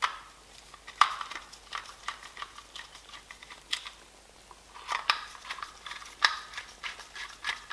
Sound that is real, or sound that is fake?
fake